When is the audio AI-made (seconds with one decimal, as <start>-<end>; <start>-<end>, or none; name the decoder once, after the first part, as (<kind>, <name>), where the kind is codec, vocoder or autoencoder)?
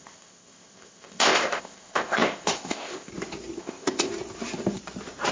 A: 0.0-3.1 (codec, ZipCodec); 3.6-4.1